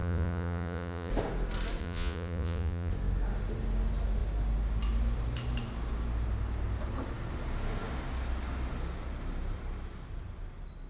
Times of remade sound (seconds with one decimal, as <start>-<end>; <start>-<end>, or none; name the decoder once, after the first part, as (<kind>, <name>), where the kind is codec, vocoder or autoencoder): 0.0-1.1 (vocoder, Vocos); 1.8-2.9